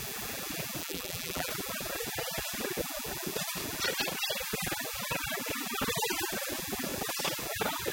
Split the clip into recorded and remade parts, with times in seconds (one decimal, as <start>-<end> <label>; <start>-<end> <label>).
0.0-0.8 recorded; 0.8-1.5 remade; 1.5-7.9 recorded